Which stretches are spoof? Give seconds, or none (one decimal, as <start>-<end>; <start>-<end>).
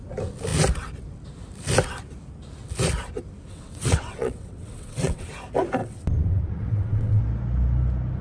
3.5-5.3; 5.8-7.2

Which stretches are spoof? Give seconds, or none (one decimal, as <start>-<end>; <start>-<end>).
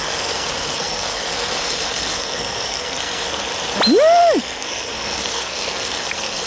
0.0-3.5; 4.4-6.5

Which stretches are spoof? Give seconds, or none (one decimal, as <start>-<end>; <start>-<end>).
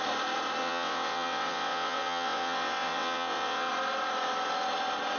0.6-3.7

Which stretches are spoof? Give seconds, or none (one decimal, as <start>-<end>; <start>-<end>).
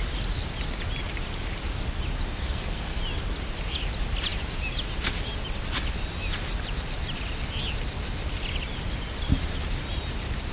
2.4-3.0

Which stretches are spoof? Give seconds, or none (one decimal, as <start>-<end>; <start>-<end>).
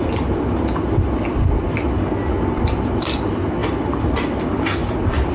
none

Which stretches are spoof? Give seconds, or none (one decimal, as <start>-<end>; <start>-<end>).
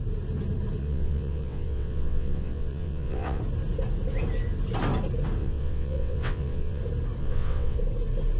0.8-3.4; 5.4-6.8; 7.2-7.8